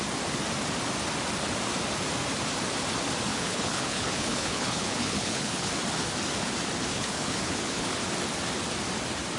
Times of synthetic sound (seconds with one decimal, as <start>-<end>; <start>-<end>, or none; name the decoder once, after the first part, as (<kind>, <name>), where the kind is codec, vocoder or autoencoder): 3.3-5.7 (codec, HILCodec); 6.9-7.9